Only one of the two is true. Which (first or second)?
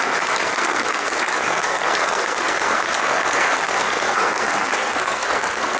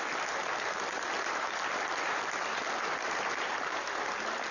second